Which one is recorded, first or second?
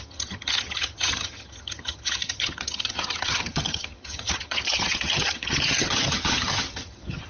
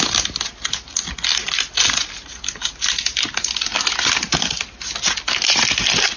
second